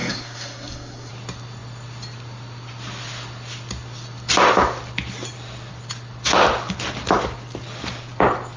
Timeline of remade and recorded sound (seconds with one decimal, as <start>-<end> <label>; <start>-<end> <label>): 0.0-1.1 remade; 1.1-8.6 recorded